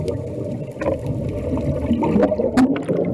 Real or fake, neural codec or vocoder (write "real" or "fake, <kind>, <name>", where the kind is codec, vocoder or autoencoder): real